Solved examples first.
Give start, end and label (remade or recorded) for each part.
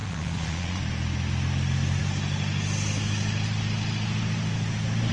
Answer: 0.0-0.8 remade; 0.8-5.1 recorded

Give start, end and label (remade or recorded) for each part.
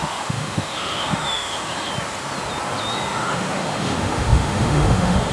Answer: 0.0-1.9 remade; 1.9-3.1 recorded; 3.1-5.3 remade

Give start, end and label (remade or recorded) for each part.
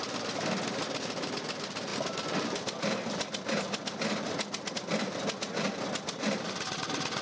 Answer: 0.0-7.2 recorded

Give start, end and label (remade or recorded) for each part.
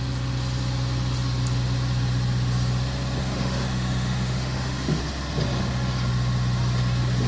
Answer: 0.0-3.2 recorded; 3.2-5.0 remade; 5.0-7.3 recorded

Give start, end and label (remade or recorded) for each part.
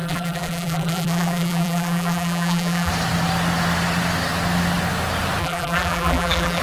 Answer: 0.0-2.9 remade; 2.9-5.4 recorded; 5.4-6.6 remade